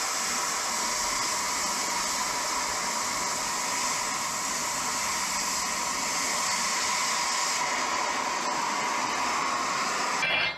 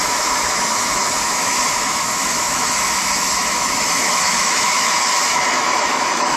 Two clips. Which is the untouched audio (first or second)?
first